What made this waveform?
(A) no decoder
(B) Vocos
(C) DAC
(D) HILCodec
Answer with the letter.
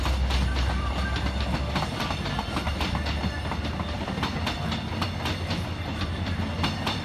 A